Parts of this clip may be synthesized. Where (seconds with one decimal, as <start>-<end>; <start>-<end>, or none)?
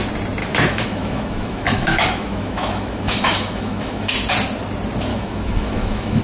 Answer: 0.4-4.1; 5.1-6.2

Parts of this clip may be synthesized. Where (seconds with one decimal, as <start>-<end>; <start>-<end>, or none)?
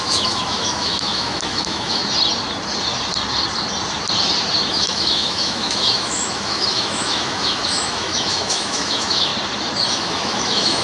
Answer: 0.0-2.0; 4.7-9.3; 9.9-10.8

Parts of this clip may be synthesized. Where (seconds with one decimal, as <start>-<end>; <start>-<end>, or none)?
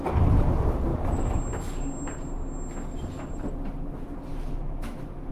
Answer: 4.3-5.3